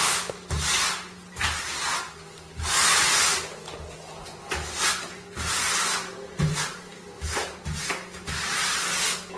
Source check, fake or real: real